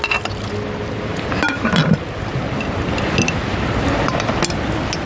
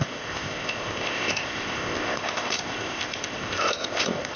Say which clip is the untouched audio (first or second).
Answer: first